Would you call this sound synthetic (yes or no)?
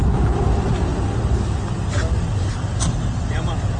no